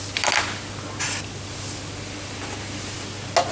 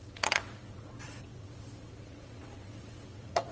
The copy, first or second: second